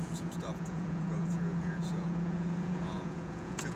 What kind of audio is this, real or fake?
fake